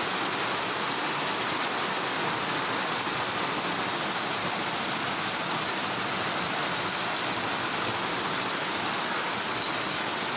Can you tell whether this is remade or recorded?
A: recorded